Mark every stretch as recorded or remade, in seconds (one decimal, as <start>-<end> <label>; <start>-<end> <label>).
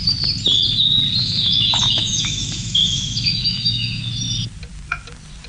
0.0-1.2 recorded; 1.2-4.0 remade; 4.0-5.5 recorded